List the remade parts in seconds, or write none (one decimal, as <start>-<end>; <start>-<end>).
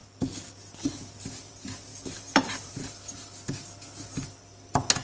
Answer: 1.9-3.0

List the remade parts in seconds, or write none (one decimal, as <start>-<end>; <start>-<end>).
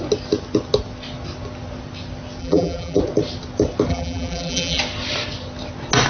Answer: 2.4-3.0; 3.9-4.8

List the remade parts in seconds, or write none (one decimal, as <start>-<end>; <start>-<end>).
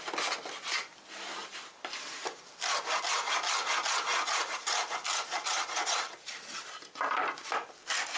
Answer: 1.4-2.4; 4.1-5.9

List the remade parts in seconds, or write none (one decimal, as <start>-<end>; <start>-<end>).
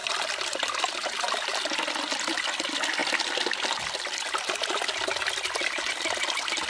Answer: 0.0-1.9